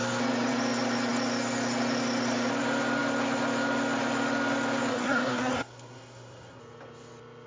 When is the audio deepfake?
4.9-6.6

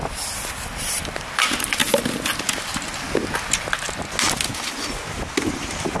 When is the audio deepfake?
none